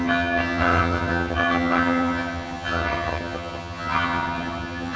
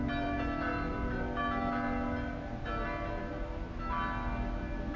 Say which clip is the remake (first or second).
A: first